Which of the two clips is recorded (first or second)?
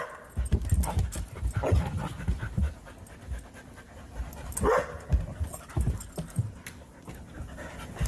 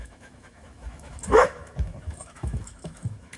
first